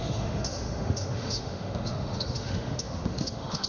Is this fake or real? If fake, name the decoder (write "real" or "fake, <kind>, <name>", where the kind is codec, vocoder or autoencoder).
fake, autoencoder, DAC-VAE